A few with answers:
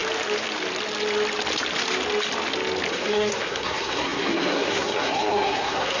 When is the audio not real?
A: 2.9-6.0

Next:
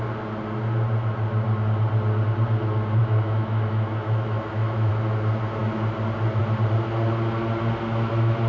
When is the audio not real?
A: 3.0-4.9

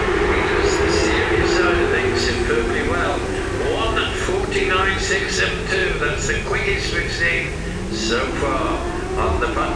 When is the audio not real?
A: none

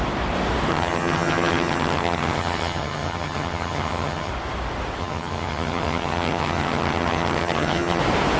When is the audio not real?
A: 0.7-4.3; 5.0-8.0

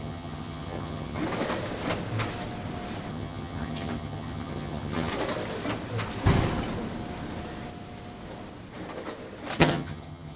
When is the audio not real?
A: 0.0-1.2; 3.1-5.1; 9.6-10.4

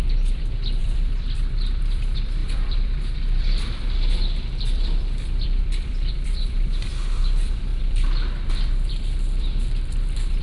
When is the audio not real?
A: 0.0-10.4